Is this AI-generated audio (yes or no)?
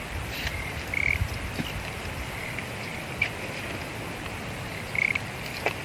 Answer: no